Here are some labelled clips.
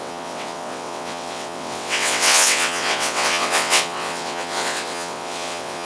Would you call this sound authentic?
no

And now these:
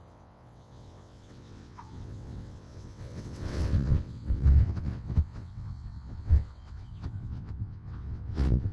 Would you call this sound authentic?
no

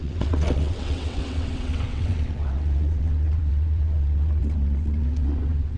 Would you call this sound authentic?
no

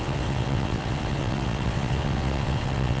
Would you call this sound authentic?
no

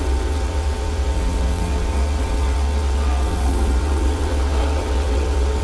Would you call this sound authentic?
no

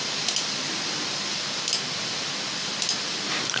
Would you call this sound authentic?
yes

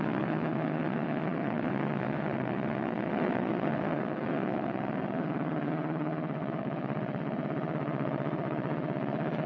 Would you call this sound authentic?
no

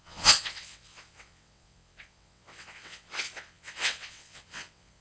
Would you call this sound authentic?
no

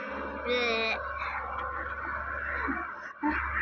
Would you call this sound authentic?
yes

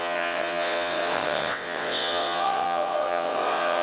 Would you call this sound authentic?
no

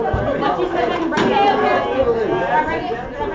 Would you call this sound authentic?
yes